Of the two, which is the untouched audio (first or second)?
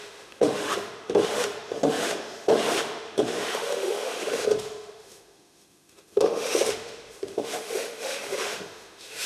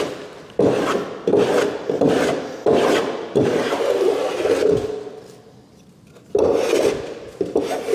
second